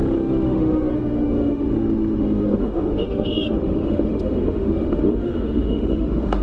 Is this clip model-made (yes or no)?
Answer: yes